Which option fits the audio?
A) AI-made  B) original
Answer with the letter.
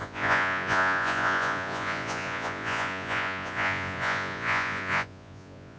A